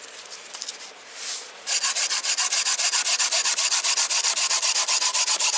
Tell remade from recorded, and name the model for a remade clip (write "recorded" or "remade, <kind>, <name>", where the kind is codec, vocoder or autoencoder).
recorded